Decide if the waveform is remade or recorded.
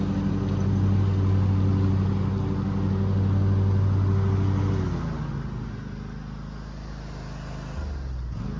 recorded